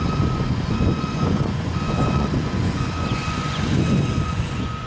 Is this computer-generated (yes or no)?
yes